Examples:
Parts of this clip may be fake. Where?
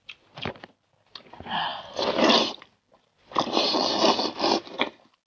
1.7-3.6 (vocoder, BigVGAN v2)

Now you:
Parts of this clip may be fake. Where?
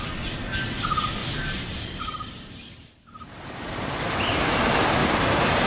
1.2-4.6 (vocoder, BigVGAN v2); 5.0-5.7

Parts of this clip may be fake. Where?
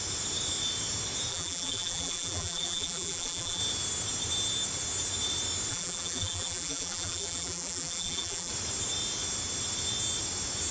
1.3-3.6 (vocoder, BigVGAN v2); 5.7-8.5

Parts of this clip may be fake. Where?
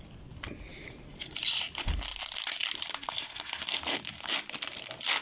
2.1-3.1 (vocoder, BigVGAN v2)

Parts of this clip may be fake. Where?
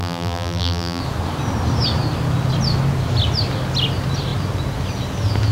0.0-1.0 (vocoder, BigVGAN v2)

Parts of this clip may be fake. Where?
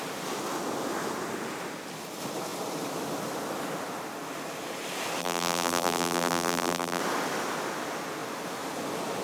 5.2-7.0 (vocoder, BigVGAN v2)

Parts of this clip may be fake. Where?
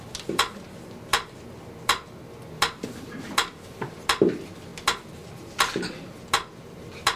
none